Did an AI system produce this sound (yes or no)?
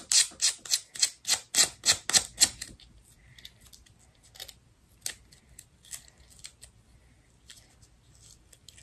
no